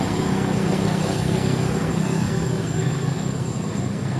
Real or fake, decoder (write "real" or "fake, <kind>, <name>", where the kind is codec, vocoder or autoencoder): fake, codec, SNAC